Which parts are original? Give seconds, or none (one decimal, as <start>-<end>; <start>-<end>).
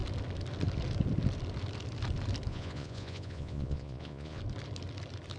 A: 0.0-2.5; 4.4-5.4